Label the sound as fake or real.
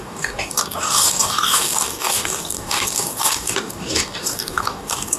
fake